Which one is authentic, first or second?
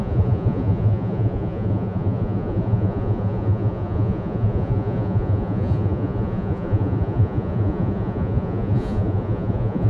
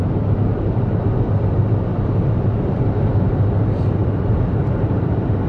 second